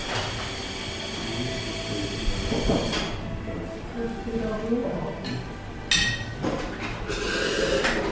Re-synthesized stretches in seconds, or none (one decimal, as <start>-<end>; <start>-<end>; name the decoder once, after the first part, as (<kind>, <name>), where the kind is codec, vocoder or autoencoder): none